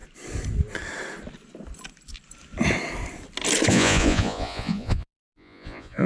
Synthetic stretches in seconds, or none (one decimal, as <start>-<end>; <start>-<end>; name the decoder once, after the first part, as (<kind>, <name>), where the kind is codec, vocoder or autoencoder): 3.7-6.1 (vocoder, Vocos)